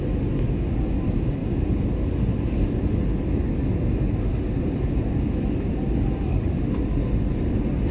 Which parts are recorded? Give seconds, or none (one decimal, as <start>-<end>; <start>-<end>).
0.0-6.3; 6.8-7.9